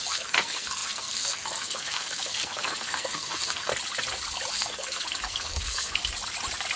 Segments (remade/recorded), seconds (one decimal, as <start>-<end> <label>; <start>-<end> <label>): 0.0-3.7 remade; 3.7-4.5 recorded; 4.5-6.0 remade; 6.0-6.8 recorded